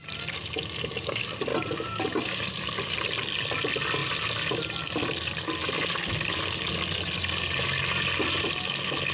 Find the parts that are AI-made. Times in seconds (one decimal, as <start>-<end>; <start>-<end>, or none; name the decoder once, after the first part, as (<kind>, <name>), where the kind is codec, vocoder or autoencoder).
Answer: none